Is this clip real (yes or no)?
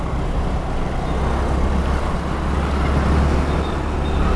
yes